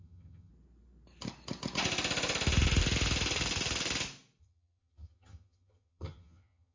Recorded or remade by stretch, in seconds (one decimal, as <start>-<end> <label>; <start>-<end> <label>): 0.0-0.5 remade; 0.5-4.4 recorded; 4.4-6.7 remade